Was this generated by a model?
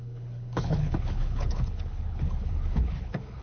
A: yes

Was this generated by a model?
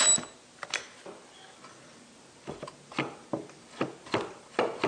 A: no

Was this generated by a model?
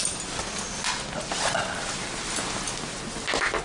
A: no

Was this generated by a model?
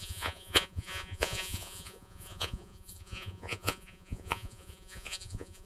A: yes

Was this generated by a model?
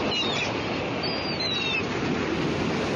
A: no